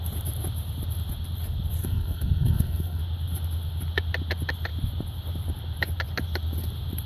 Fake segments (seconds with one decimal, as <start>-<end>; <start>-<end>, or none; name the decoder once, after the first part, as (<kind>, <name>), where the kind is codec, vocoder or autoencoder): 1.8-3.0 (codec, SNAC)